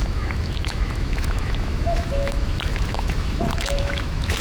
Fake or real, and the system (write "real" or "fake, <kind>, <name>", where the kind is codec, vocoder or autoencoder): fake, autoencoder, DAC-VAE